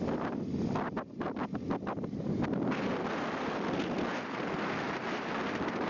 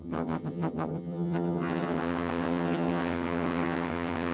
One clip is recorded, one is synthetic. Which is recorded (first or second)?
first